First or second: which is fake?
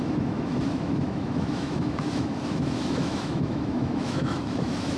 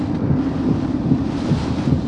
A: first